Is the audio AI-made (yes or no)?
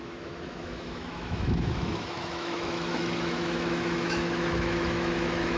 yes